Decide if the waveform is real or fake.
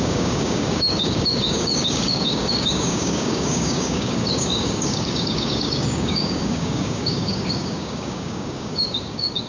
fake